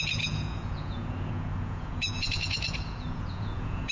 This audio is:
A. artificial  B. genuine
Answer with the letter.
A